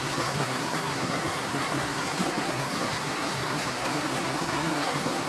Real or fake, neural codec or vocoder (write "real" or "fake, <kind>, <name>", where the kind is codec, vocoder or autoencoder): fake, codec, SNAC